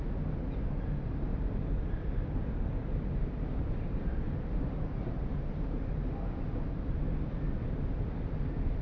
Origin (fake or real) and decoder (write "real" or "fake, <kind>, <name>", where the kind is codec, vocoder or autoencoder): real